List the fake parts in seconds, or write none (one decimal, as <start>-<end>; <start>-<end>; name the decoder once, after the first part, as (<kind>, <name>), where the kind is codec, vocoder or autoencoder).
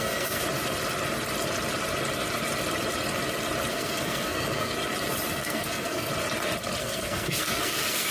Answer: 0.0-0.4 (codec, SNAC); 3.7-4.7; 5.3-6.1; 6.8-8.1